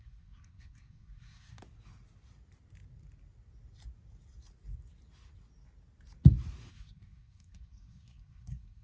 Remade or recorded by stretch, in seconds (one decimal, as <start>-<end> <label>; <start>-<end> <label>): 0.0-1.6 remade; 1.6-6.7 recorded; 6.7-8.8 remade